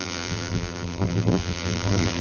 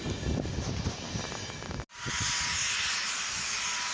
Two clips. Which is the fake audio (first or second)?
first